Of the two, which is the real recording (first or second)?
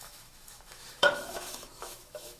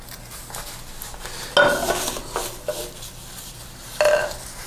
second